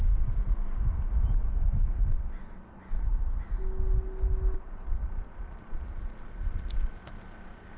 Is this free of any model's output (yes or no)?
yes